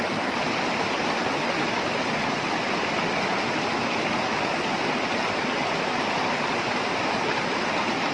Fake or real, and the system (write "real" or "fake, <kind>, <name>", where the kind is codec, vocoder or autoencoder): real